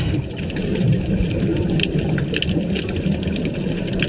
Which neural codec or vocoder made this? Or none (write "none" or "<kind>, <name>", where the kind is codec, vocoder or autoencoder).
vocoder, BigVGAN v2